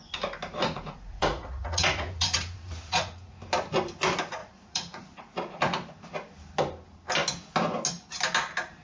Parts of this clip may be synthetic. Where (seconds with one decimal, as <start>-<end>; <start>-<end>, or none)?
0.6-3.4; 4.4-5.6